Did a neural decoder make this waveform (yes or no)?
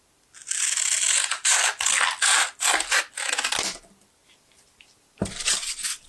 no